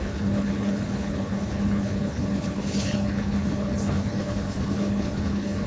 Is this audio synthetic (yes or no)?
yes